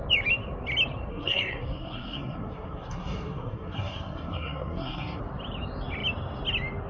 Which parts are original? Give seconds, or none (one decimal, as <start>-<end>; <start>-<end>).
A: 0.0-1.1; 5.2-6.9